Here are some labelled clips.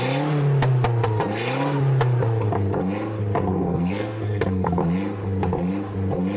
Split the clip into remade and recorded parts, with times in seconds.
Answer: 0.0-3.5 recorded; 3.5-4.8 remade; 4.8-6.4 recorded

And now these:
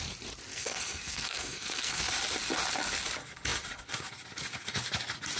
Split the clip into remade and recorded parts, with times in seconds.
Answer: 0.0-0.5 recorded; 0.5-2.0 remade; 2.0-5.4 recorded

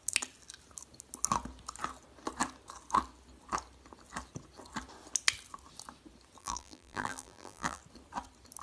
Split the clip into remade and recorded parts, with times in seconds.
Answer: 0.0-6.4 recorded; 6.4-7.8 remade; 7.8-8.6 recorded

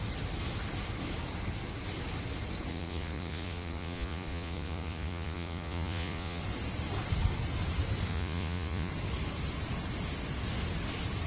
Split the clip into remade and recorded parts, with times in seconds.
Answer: 0.0-2.7 recorded; 2.7-6.4 remade; 6.4-8.1 recorded; 8.1-8.9 remade; 8.9-11.3 recorded

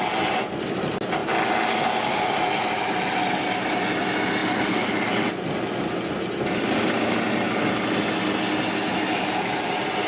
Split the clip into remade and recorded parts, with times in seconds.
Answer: 0.0-10.1 recorded

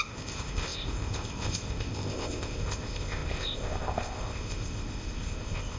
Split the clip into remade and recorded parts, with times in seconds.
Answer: 0.0-5.8 remade